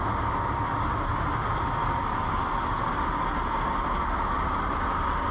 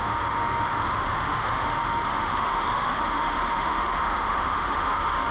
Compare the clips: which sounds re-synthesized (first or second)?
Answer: second